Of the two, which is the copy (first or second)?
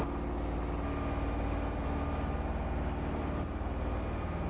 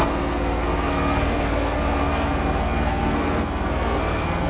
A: second